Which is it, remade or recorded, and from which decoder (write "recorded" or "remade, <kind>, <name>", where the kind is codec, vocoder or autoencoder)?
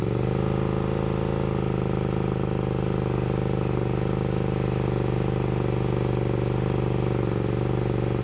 recorded